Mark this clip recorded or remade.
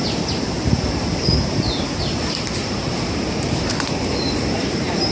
remade